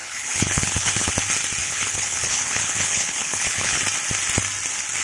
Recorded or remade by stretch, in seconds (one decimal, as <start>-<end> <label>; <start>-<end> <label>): 0.0-1.1 remade; 1.1-1.6 recorded; 1.6-3.8 remade; 3.8-5.0 recorded

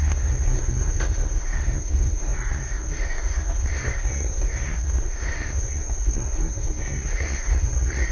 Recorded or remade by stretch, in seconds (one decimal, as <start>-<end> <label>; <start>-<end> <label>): 0.0-8.1 remade

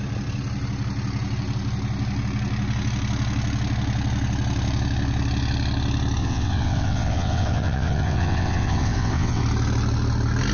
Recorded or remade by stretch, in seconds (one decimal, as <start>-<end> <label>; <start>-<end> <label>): 0.0-6.2 recorded; 6.2-9.4 remade; 9.4-10.5 recorded

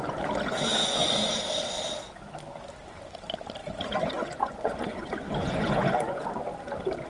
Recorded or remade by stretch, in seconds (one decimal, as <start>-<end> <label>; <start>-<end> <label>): 0.0-0.8 recorded; 0.8-1.3 remade; 1.3-3.6 recorded; 3.6-6.3 remade; 6.3-7.1 recorded

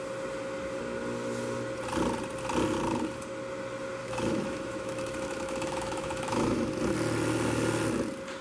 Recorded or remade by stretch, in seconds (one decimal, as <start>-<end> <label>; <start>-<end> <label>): 0.0-4.0 recorded; 4.0-6.7 remade; 6.7-8.4 recorded

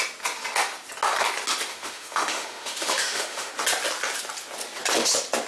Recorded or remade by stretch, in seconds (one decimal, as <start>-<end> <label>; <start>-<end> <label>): 0.0-1.7 recorded; 1.7-3.5 remade; 3.5-5.5 recorded

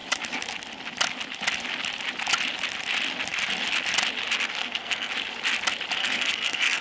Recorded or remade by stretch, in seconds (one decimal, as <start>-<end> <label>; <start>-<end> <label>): 0.0-4.6 recorded; 4.6-5.1 remade; 5.1-6.0 recorded; 6.0-6.8 remade